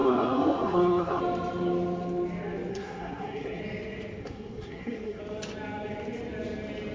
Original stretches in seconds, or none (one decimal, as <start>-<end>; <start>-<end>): 1.2-2.7; 3.6-4.2; 5.2-6.9

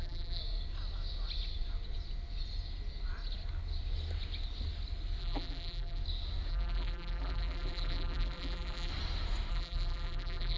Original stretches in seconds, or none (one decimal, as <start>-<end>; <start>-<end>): 0.4-5.2; 6.0-6.5; 8.9-9.5

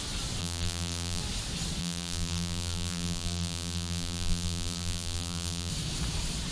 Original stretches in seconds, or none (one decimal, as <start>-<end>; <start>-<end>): 0.0-0.4; 1.2-1.8; 5.7-6.5

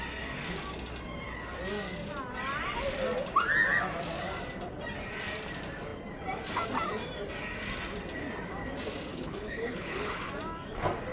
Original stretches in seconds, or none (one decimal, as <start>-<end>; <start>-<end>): 0.0-9.1; 10.3-11.1

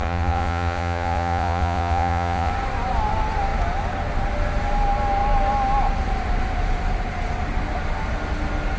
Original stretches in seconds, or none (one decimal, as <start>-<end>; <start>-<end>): 2.5-8.8